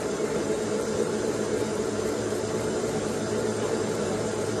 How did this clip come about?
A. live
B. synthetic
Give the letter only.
B